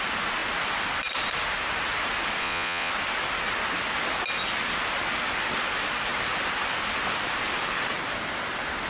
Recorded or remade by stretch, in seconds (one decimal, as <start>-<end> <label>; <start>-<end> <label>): 0.0-2.4 recorded; 2.4-2.9 remade; 2.9-8.9 recorded